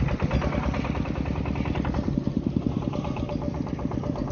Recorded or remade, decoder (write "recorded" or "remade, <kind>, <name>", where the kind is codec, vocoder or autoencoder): recorded